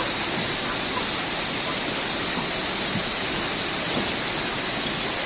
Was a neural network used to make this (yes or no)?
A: no